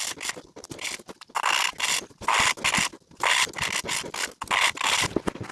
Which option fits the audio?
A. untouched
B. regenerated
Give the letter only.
A